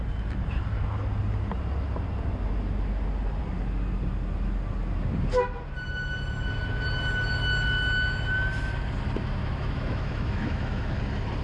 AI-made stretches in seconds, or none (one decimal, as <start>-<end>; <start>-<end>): 9.4-11.0